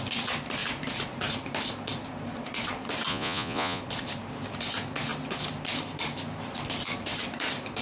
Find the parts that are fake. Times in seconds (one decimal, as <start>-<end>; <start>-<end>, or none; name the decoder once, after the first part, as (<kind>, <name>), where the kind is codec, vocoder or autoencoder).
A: 3.1-3.8 (vocoder, Vocos)

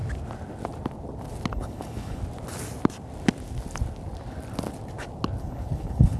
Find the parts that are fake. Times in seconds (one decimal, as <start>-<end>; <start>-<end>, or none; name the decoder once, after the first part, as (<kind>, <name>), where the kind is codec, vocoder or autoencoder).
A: 1.5-2.2 (codec, HILCodec); 5.4-6.2

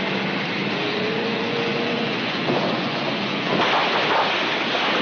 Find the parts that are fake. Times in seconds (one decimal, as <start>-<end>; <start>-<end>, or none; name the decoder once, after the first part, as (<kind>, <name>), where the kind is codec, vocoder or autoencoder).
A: 0.6-3.6 (vocoder, Vocos)

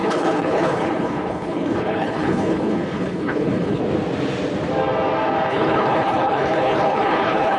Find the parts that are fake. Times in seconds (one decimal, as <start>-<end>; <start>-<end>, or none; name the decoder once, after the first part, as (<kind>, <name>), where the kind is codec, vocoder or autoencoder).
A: 0.0-3.8 (codec, HILCodec); 5.5-7.6

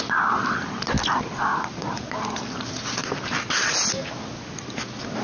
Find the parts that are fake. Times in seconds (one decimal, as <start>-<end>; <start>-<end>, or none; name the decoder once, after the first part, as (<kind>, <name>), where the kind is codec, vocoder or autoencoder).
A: none

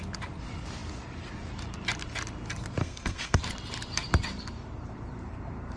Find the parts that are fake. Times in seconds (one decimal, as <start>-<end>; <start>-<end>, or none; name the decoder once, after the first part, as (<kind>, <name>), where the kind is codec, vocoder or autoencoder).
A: 2.8-3.4 (codec, SNAC)

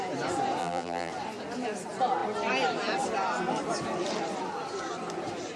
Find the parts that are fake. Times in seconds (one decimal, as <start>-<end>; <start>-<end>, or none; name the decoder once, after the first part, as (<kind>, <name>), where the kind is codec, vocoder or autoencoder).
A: 0.6-1.1 (vocoder, BigVGAN v2)